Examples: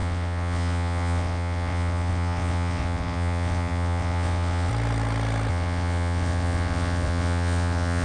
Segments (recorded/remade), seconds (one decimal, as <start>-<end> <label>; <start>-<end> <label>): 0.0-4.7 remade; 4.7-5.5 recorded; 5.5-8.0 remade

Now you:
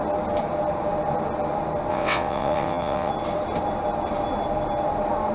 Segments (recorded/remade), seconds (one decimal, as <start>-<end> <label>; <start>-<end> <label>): 0.0-1.9 recorded; 1.9-3.1 remade; 3.1-5.3 recorded

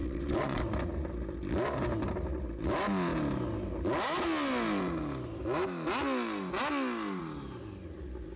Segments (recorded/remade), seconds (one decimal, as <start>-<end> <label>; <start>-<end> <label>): 0.0-0.6 remade; 0.6-8.4 recorded

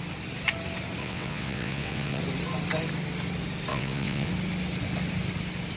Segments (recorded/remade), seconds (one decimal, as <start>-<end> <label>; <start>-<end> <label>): 0.0-1.0 recorded; 1.0-2.2 remade; 2.2-3.7 recorded; 3.7-4.3 remade; 4.3-5.8 recorded

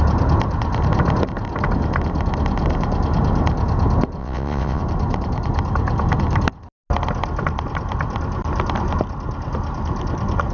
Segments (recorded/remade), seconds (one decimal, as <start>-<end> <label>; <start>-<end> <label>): 0.0-4.2 recorded; 4.2-4.8 remade; 4.8-10.5 recorded